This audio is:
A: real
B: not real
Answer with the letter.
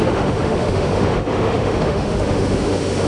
B